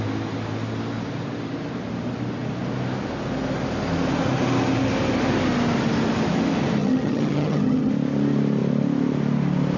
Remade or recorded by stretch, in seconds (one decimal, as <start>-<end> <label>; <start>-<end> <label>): 0.0-6.8 recorded; 6.8-7.9 remade; 7.9-9.8 recorded